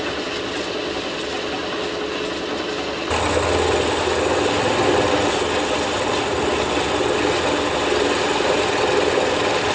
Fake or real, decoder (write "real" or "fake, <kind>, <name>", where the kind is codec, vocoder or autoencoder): real